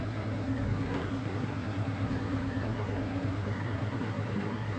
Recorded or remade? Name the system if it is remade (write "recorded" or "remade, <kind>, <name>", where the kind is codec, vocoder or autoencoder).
remade, codec, SNAC